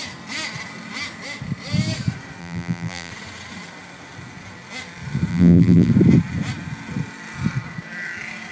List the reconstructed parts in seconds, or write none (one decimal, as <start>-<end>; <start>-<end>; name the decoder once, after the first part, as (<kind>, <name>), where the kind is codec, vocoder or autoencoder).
2.4-3.1 (vocoder, BigVGAN v2); 5.3-5.9